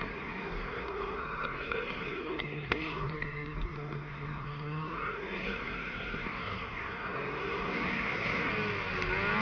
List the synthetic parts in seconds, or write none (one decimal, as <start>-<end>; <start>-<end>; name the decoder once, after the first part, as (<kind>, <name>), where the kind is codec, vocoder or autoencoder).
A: 0.0-8.5 (codec, SNAC)